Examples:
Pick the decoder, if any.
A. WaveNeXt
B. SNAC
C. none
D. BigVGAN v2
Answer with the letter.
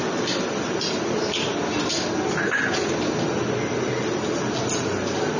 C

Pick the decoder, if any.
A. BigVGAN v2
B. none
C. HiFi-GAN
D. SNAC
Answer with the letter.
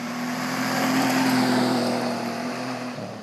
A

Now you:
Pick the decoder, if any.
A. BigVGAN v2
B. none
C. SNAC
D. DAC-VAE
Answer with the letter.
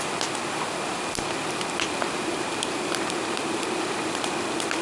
B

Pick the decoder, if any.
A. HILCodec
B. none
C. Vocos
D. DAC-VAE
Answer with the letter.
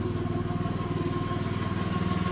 B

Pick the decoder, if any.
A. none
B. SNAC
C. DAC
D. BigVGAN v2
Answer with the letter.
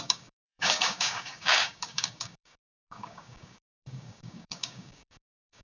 C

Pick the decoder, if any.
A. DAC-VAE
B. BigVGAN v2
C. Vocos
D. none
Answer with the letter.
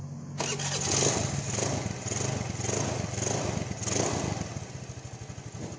D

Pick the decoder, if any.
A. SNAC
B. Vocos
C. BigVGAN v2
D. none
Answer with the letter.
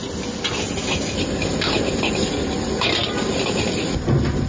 D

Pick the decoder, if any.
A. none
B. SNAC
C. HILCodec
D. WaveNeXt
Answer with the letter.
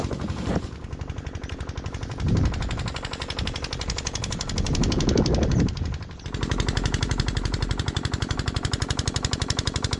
A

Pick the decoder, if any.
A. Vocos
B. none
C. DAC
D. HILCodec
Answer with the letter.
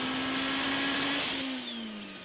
B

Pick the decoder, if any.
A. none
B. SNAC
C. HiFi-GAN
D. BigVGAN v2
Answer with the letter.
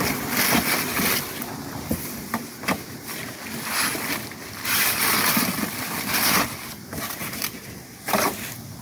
A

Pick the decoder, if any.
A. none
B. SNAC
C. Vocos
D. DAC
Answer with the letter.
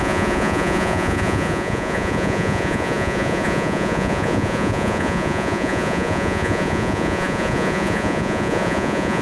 C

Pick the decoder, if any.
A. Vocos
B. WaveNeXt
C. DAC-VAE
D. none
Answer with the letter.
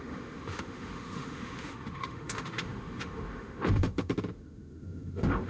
C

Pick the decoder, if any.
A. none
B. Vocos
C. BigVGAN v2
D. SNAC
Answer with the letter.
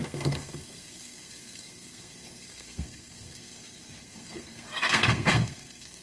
D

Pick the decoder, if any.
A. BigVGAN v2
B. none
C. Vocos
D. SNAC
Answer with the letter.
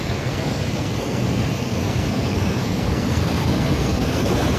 D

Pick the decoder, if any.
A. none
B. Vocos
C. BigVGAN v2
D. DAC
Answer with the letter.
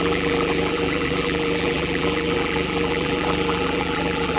C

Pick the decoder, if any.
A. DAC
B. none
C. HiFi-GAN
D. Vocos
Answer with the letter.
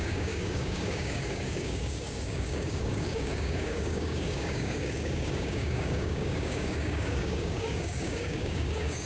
A